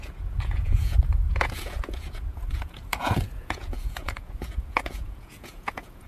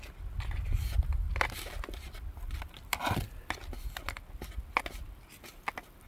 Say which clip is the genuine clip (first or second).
second